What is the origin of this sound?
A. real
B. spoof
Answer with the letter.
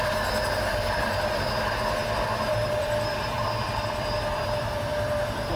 B